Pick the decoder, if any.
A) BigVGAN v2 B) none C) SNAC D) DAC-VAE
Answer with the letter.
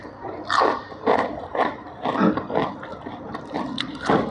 A